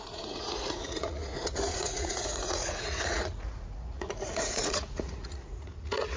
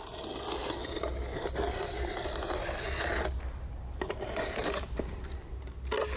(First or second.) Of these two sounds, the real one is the second